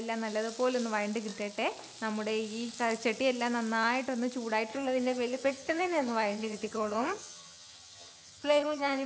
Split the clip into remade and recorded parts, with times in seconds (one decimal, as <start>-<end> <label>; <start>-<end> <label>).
0.0-4.7 recorded; 4.7-9.1 remade